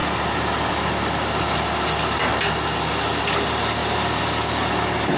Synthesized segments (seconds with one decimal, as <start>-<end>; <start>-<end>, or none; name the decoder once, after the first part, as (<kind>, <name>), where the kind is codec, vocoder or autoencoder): none